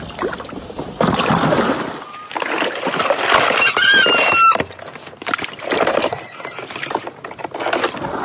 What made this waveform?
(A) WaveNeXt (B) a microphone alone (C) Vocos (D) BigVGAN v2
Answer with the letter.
B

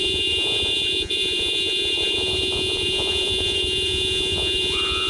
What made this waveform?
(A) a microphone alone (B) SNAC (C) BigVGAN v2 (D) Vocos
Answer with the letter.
D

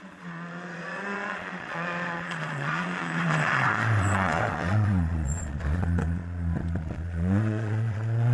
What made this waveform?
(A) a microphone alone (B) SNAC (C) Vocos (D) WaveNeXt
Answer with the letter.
C